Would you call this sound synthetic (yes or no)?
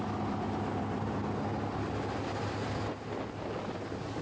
no